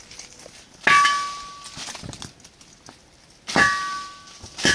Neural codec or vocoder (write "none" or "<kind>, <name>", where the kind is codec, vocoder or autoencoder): none